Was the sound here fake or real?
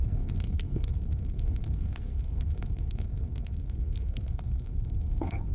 fake